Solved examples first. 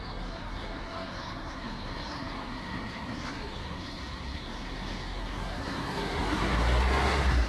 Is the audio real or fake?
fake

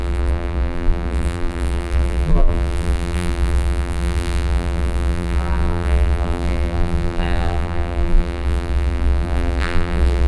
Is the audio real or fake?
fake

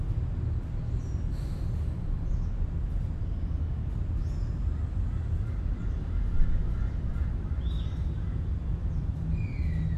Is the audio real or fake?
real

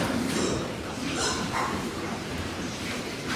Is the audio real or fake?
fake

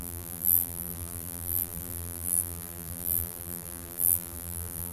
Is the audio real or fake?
fake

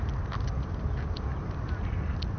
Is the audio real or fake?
real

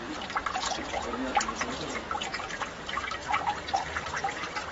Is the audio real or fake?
fake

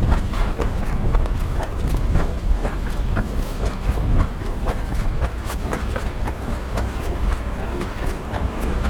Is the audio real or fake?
fake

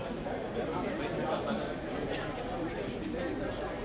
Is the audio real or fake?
real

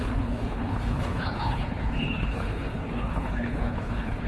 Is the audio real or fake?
fake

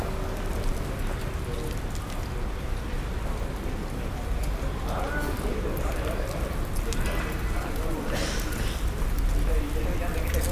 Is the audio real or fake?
real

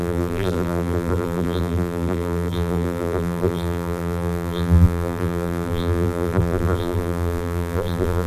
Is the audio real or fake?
fake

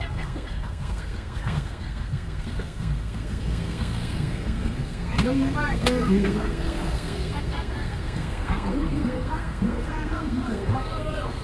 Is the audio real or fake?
fake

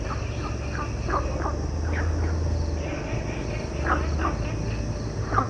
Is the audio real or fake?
real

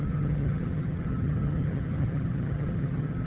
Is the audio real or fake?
fake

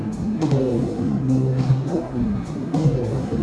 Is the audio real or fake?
fake